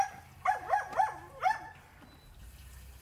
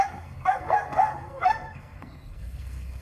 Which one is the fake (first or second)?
second